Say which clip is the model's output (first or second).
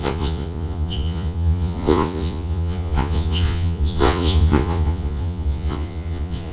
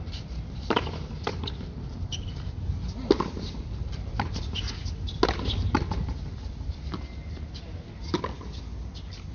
first